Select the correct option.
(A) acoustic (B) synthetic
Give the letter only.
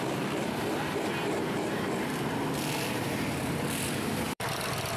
B